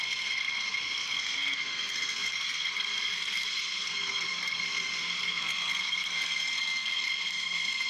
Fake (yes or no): yes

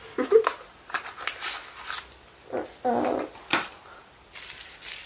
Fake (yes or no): no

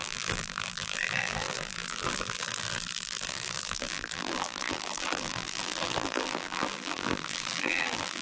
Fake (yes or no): yes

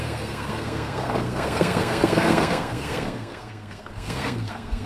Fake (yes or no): yes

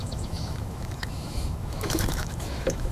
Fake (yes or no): yes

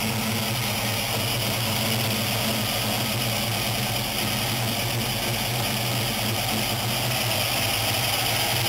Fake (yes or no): no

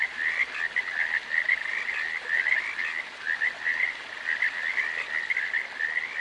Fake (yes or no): no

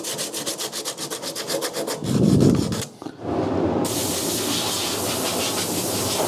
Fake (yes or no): no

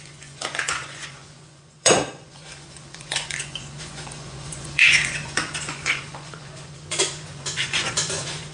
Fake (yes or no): yes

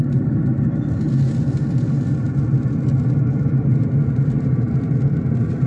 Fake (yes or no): no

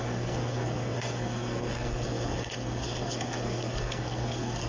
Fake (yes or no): yes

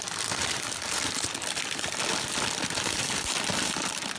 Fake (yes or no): yes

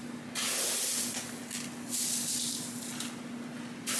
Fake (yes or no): no